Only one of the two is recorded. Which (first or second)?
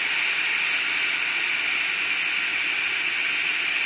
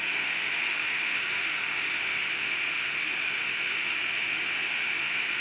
first